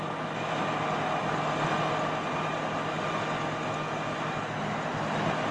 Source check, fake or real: real